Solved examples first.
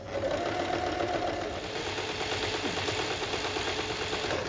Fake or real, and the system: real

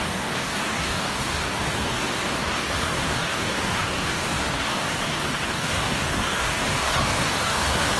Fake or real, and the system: fake, codec, DAC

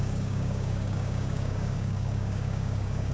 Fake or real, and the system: fake, codec, DAC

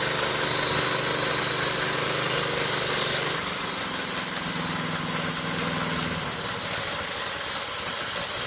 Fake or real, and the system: real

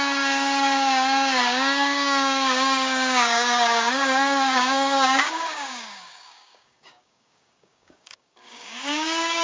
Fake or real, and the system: fake, codec, DAC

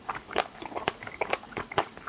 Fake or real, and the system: fake, codec, DAC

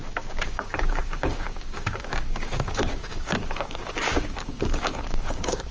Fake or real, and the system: fake, codec, DAC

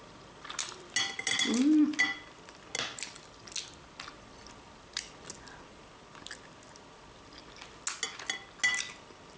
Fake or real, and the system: real